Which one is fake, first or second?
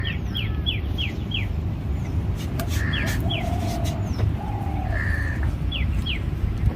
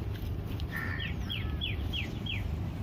second